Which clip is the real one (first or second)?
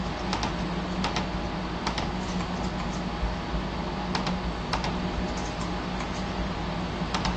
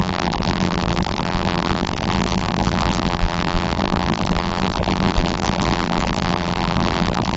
first